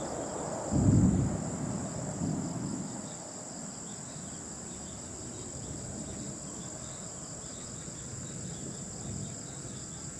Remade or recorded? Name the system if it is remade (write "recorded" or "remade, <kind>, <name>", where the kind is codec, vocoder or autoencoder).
recorded